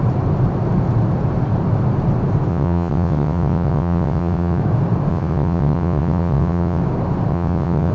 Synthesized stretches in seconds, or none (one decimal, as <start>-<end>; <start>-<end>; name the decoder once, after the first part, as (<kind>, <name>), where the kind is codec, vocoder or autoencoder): 2.5-4.6 (vocoder, WaveNeXt); 5.1-6.8; 7.3-7.9